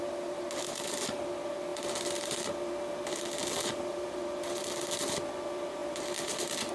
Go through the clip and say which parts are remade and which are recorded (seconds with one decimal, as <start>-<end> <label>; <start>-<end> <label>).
0.0-1.7 recorded; 1.7-2.5 remade; 2.5-3.4 recorded; 3.4-5.0 remade; 5.0-5.8 recorded; 5.8-6.7 remade